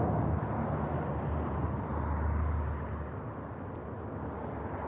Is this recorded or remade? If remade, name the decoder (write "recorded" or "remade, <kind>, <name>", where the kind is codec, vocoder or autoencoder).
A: recorded